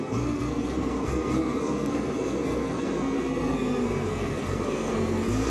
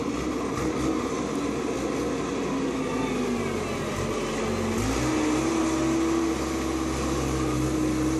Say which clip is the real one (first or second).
second